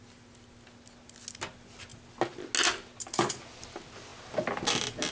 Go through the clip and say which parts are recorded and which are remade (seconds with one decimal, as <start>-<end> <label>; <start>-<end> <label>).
0.0-5.1 recorded